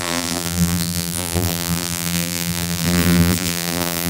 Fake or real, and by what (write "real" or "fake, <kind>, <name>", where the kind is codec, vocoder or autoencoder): fake, vocoder, BigVGAN v2